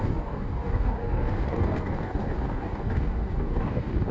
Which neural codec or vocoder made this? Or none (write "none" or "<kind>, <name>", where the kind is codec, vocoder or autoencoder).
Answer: codec, DAC